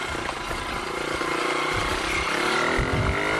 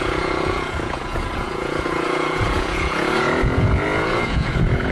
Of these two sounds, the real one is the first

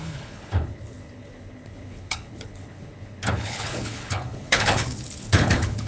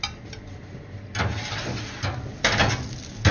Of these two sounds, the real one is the second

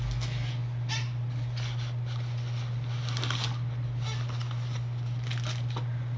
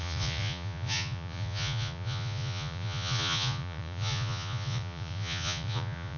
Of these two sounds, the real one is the first